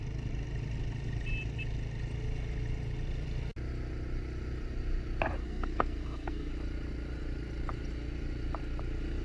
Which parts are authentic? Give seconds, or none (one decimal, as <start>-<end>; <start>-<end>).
0.0-5.4; 6.5-9.2